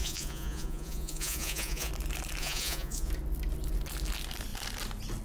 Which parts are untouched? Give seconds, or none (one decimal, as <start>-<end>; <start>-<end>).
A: 1.9-2.4; 3.1-5.2